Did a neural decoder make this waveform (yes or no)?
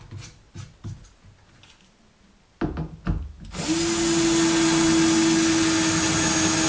no